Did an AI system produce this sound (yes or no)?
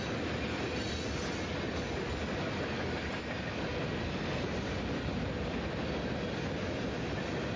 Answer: no